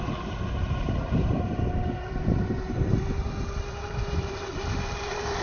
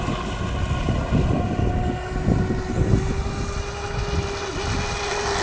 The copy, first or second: first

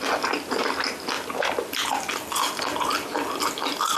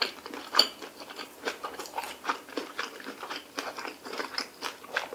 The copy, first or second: second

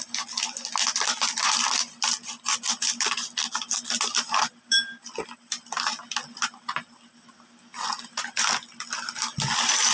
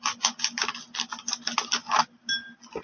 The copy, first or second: first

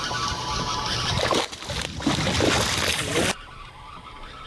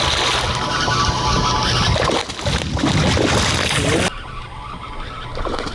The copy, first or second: first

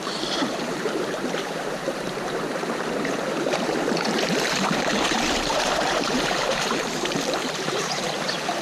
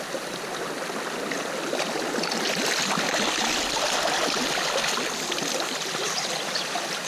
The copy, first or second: first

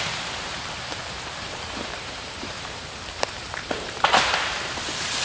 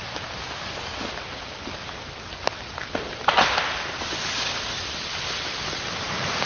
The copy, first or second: first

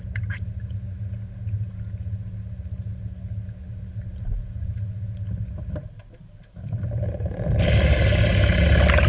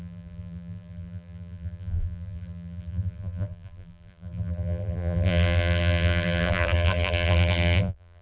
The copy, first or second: second